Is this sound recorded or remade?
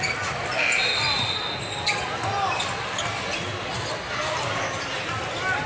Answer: recorded